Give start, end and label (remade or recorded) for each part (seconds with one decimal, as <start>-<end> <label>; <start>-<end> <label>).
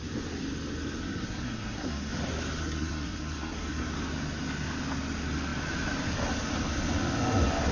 0.0-1.0 recorded; 1.0-2.1 remade; 2.1-2.6 recorded; 2.6-3.9 remade; 3.9-7.7 recorded